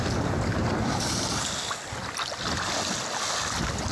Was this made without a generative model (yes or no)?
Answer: yes